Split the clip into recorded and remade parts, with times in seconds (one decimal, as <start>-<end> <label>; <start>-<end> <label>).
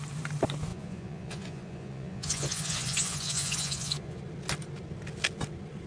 0.0-0.7 recorded; 0.7-4.2 remade; 4.2-5.9 recorded